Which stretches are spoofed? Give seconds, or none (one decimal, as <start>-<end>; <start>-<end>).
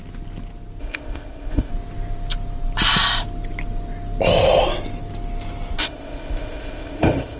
0.8-1.7; 5.8-7.4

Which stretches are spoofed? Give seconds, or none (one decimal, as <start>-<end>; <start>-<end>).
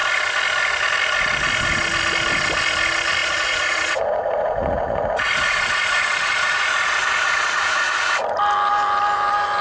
3.2-8.1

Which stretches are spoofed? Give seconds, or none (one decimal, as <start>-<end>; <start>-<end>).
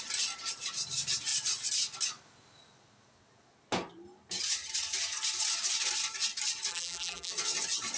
6.7-7.3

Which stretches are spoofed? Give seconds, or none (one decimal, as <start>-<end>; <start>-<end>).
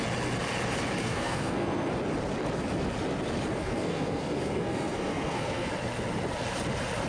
1.0-1.9; 3.6-5.7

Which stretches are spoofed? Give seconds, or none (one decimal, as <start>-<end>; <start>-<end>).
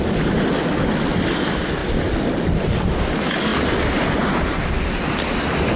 none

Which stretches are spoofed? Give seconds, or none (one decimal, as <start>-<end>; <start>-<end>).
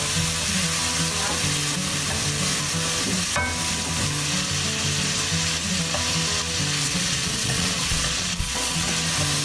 6.8-8.9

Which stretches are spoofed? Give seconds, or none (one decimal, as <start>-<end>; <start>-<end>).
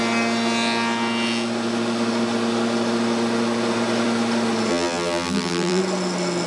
4.7-5.8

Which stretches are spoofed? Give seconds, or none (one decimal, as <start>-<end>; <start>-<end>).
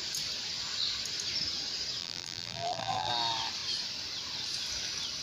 2.0-3.1